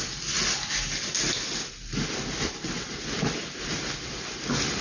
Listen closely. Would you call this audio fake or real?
real